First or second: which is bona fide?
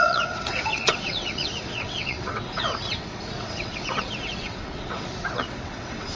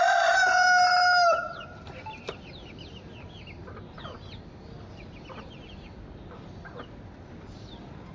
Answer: second